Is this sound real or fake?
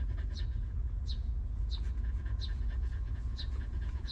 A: fake